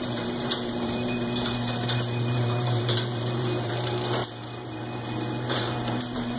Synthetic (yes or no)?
yes